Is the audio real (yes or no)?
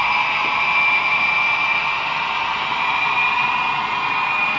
yes